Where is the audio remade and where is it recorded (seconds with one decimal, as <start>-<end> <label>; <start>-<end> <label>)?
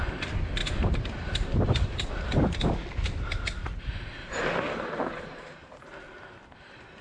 0.0-0.6 recorded; 0.6-2.1 remade; 2.1-4.2 recorded; 4.2-5.8 remade; 5.8-7.0 recorded